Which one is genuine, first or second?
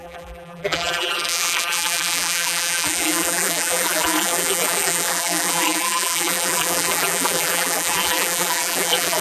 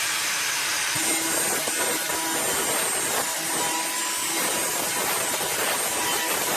second